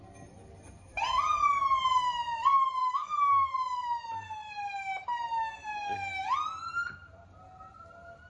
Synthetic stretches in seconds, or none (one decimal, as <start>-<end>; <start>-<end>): 2.8-3.5